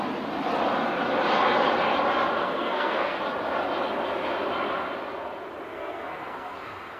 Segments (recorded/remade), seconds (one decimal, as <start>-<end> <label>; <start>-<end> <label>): 0.0-2.4 recorded; 2.4-3.2 remade; 3.2-5.7 recorded; 5.7-7.0 remade